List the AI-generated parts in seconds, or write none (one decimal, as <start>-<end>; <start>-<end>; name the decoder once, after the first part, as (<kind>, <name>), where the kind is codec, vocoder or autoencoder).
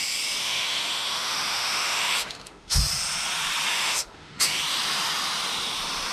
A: 0.4-2.8 (autoencoder, DAC-VAE); 3.7-4.6